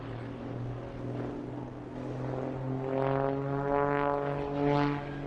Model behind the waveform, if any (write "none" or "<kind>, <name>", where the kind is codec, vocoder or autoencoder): none